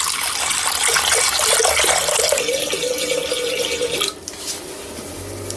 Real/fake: real